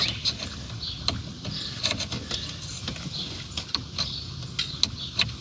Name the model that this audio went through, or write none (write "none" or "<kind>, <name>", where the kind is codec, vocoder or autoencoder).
none